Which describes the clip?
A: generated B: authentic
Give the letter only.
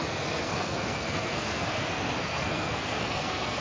A